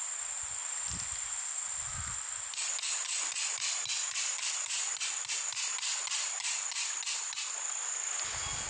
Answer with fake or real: real